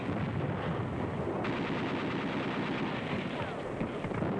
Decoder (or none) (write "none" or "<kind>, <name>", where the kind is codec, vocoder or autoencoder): none